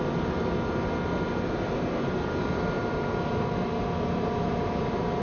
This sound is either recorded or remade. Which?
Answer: recorded